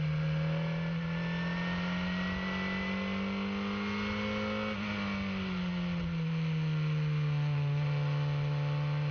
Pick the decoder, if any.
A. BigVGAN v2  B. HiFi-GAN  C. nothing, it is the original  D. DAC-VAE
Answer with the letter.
C